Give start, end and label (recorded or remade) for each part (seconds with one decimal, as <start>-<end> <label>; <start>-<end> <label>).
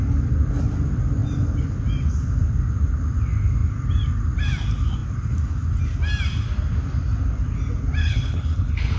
0.0-8.0 recorded; 8.0-9.0 remade